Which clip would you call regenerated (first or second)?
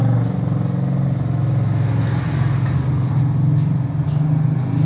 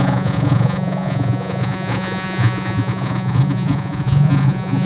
second